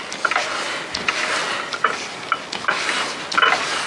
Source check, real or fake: real